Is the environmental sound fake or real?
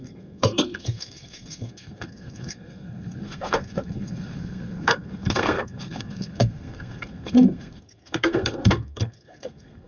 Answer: fake